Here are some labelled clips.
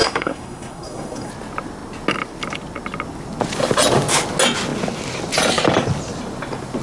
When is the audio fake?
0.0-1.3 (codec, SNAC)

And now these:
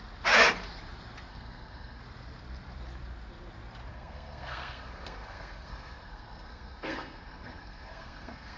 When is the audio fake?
1.3-2.0 (codec, SNAC); 3.9-8.6

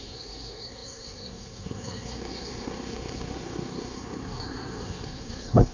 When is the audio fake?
0.0-5.7 (codec, SNAC)

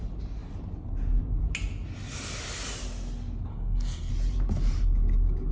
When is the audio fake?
3.5-4.1 (codec, SNAC)